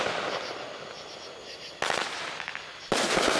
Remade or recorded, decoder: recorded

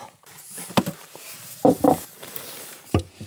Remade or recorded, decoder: remade, vocoder, BigVGAN v2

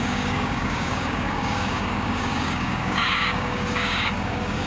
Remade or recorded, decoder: remade, codec, DAC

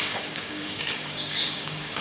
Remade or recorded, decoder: remade, codec, DAC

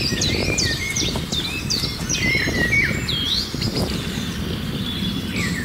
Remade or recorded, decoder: remade, vocoder, BigVGAN v2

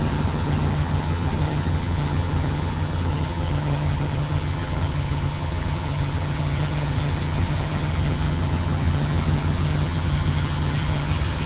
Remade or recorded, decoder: remade, vocoder, HiFi-GAN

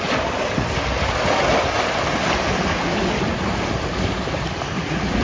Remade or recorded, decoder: recorded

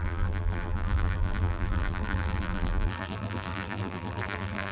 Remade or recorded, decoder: remade, vocoder, BigVGAN v2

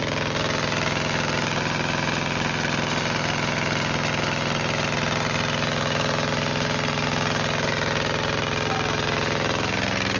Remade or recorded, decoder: recorded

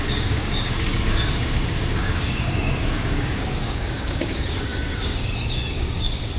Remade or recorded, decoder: remade, codec, DAC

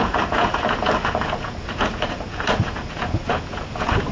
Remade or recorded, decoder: remade, vocoder, Vocos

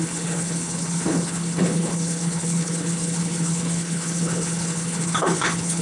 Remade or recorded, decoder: remade, codec, HILCodec